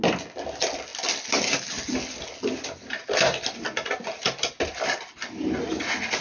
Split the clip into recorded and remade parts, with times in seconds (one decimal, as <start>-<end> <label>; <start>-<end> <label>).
0.0-6.2 recorded